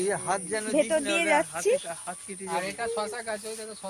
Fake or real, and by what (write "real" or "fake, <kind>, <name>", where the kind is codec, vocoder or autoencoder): real